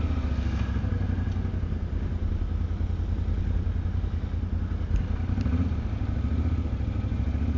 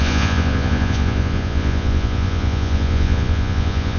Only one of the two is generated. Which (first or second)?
second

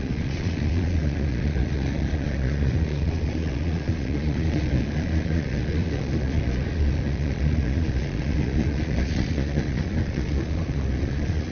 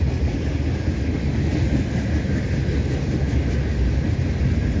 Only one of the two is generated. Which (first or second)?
first